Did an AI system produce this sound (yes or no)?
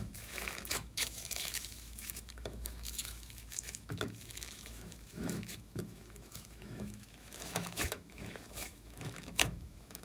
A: yes